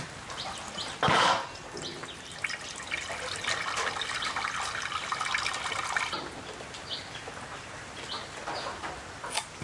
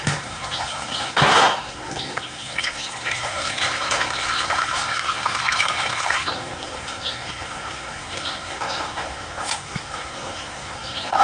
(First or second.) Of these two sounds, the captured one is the first